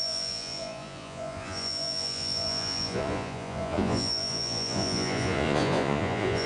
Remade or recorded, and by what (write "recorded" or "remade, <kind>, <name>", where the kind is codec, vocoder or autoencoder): remade, vocoder, Vocos